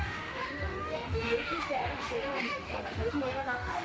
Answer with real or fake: fake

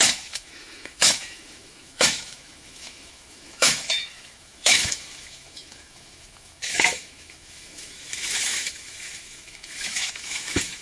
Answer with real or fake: fake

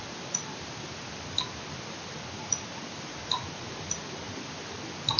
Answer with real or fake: real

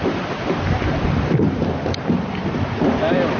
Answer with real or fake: fake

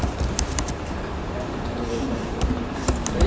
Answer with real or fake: fake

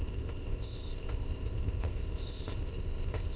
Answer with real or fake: fake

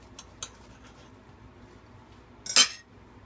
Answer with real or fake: real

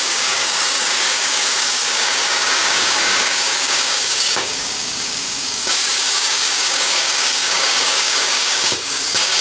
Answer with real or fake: fake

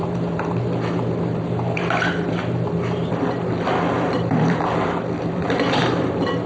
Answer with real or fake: fake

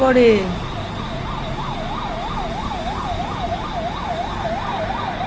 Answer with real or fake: real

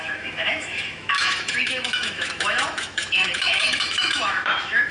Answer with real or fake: fake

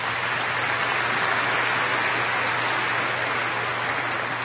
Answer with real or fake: real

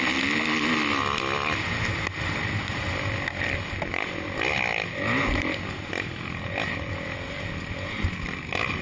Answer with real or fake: real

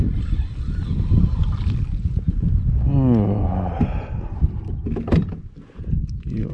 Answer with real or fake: real